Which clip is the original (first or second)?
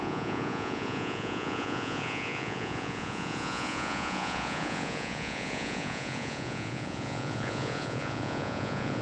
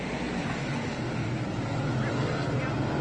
second